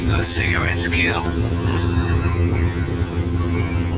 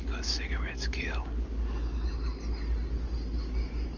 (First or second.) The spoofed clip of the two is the first